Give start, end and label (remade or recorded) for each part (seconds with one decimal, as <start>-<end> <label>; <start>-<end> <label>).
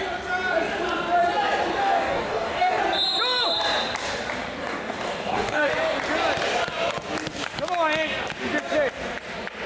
0.0-1.8 recorded; 1.8-2.8 remade; 2.8-4.6 recorded; 4.6-5.7 remade; 5.7-9.7 recorded